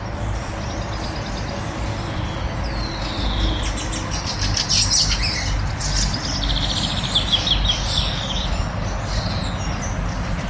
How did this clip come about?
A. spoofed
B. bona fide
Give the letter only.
B